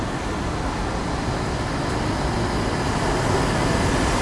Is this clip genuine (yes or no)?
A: yes